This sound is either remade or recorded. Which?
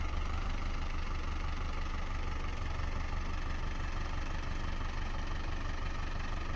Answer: remade